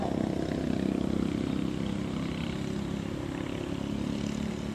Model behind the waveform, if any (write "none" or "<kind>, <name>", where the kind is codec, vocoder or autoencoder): none